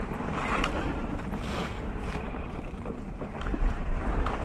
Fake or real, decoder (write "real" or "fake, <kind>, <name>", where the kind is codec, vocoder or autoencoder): fake, vocoder, BigVGAN v2